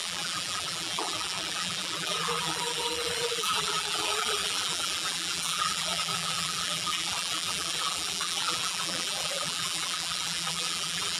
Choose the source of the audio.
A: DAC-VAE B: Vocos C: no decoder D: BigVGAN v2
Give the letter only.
D